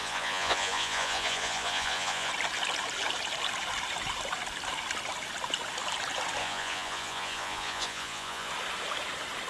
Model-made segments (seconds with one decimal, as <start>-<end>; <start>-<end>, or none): 0.0-2.3; 6.4-8.5